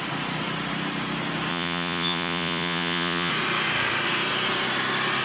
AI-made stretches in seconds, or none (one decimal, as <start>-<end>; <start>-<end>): 1.5-3.3